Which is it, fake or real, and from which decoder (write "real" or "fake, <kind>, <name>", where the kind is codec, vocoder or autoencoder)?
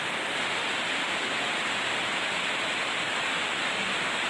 real